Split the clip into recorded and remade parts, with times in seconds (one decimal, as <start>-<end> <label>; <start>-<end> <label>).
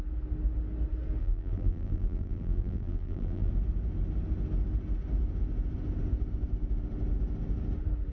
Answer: 0.0-1.2 recorded; 1.2-3.5 remade; 3.5-8.1 recorded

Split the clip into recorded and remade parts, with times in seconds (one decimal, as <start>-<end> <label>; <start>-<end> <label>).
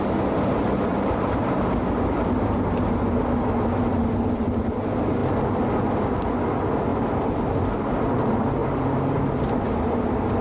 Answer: 0.0-0.9 recorded; 0.9-1.7 remade; 1.7-6.9 recorded; 6.9-7.4 remade; 7.4-8.6 recorded; 8.6-9.2 remade; 9.2-10.4 recorded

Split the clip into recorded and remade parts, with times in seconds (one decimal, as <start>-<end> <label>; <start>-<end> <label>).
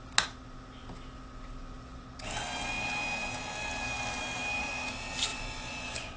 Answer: 0.0-5.3 recorded; 5.3-6.2 remade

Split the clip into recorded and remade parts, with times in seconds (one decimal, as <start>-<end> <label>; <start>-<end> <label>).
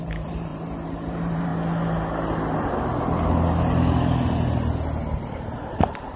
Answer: 0.0-1.5 remade; 1.5-5.2 recorded; 5.2-6.2 remade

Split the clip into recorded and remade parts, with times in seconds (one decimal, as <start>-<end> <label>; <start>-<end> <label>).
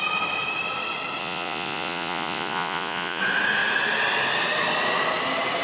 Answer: 0.0-1.2 recorded; 1.2-3.2 remade; 3.2-5.6 recorded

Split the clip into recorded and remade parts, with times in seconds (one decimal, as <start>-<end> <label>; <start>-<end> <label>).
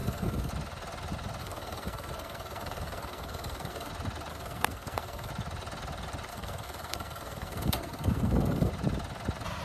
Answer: 0.0-0.5 remade; 0.5-1.4 recorded; 1.4-3.9 remade; 3.9-4.3 recorded; 4.3-5.3 remade; 5.3-6.3 recorded; 6.3-8.7 remade; 8.7-9.6 recorded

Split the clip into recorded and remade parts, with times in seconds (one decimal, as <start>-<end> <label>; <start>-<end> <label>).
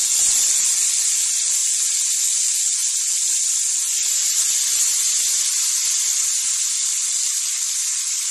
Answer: 0.0-2.8 remade; 2.8-7.0 recorded; 7.0-8.3 remade